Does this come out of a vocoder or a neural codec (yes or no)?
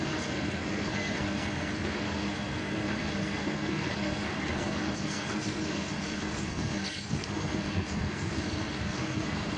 yes